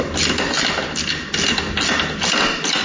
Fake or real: real